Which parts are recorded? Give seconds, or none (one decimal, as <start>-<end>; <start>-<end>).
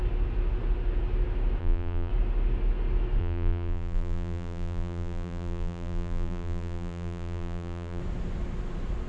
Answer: 0.0-1.6; 2.1-3.2; 8.0-9.1